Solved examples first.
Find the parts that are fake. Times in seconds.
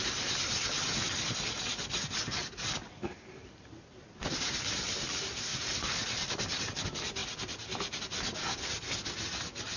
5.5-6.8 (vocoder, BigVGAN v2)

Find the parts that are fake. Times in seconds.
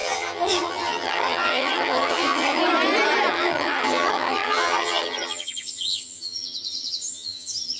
0.0-2.6 (vocoder, HiFi-GAN); 3.3-7.8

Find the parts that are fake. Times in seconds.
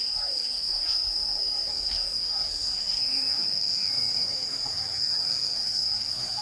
0.0-6.4 (codec, SNAC)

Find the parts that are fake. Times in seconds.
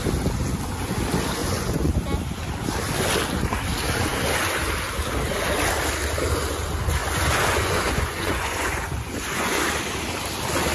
1.4-1.9 (vocoder, Vocos); 7.0-9.6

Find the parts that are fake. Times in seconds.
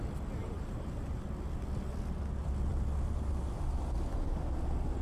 0.4-1.2 (vocoder, BigVGAN v2)